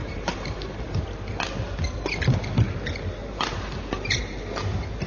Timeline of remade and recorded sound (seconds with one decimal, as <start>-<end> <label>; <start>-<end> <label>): 0.0-1.0 remade; 1.0-3.2 recorded; 3.2-4.4 remade; 4.4-5.1 recorded